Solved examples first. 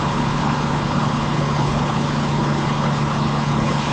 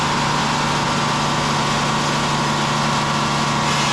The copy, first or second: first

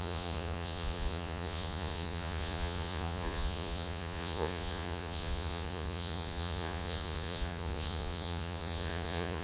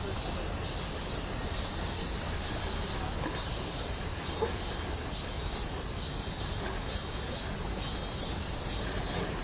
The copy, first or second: first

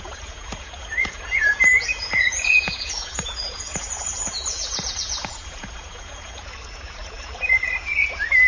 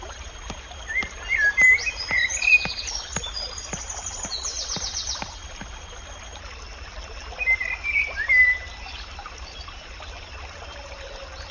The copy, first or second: first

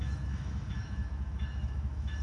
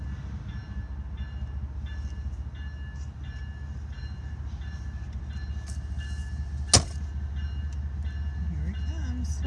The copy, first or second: first